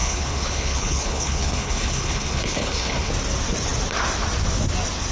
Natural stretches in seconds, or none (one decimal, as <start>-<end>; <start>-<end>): 3.1-5.1